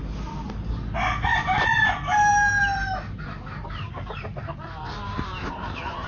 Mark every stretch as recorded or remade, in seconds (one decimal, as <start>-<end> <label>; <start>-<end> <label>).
0.0-1.3 recorded; 1.3-1.9 remade; 1.9-2.3 recorded; 2.3-6.1 remade